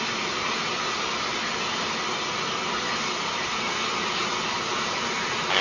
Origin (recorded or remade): recorded